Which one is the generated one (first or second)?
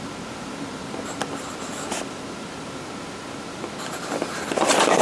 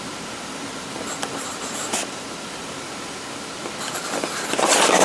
second